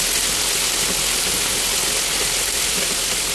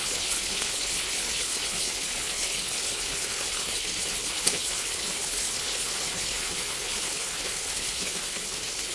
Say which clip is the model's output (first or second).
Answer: second